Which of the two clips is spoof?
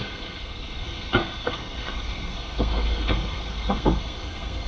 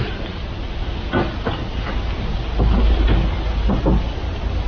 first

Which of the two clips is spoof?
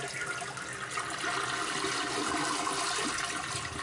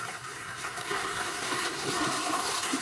second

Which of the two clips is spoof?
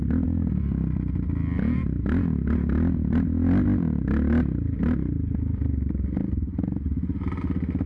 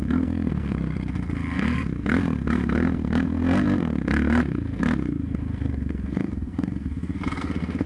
second